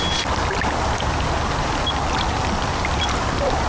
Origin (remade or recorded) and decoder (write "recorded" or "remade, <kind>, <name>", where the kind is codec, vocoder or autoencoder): recorded